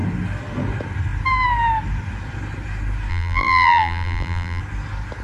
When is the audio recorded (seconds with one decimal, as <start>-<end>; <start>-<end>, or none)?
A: 0.0-3.1; 4.6-5.2